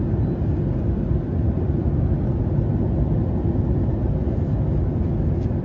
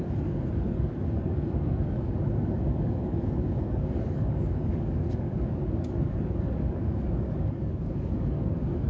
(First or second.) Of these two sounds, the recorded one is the first